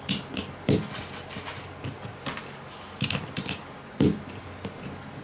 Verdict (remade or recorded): recorded